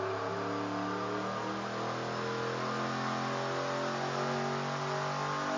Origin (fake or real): real